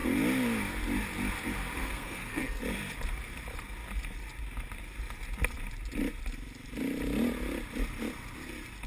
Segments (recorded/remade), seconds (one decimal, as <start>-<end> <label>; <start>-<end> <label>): 0.0-1.8 recorded; 1.8-2.6 remade; 2.6-8.9 recorded